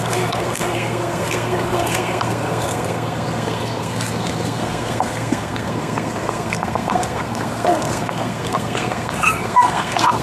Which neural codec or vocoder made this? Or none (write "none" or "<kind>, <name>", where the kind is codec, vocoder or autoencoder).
codec, SNAC